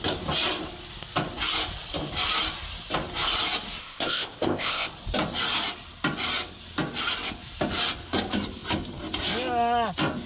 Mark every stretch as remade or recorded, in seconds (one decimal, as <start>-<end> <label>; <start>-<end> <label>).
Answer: 0.0-3.8 recorded; 3.8-4.9 remade; 4.9-10.3 recorded